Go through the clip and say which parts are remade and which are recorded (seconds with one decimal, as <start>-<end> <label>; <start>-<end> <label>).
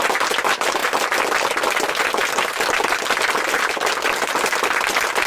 0.0-0.8 recorded; 0.8-1.6 remade; 1.6-2.2 recorded; 2.2-4.8 remade; 4.8-5.3 recorded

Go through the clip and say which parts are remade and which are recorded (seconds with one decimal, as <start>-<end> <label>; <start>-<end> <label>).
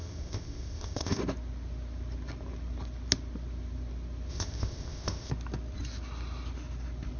0.0-1.2 remade; 1.2-4.3 recorded; 4.3-5.3 remade; 5.3-7.2 recorded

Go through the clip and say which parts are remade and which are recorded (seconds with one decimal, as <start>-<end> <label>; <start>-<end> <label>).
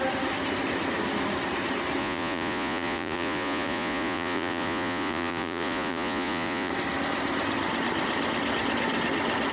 0.0-2.0 recorded; 2.0-6.7 remade; 6.7-9.5 recorded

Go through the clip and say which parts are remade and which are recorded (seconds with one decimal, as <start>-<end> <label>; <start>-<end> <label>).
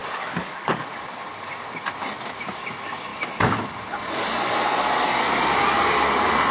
0.0-0.8 remade; 0.8-6.5 recorded